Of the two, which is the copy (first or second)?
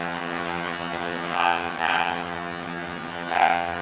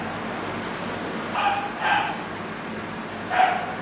first